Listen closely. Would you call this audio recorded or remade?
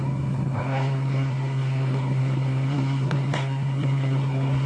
remade